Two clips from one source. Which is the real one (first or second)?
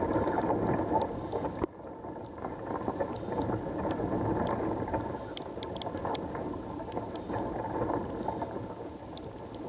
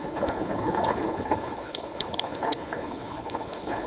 first